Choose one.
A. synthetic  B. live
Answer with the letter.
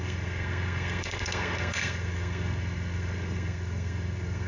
A